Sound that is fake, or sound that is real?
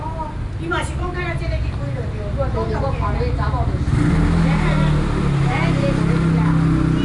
real